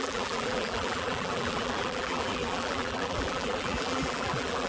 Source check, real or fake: fake